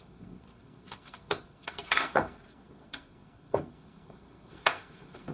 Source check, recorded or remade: remade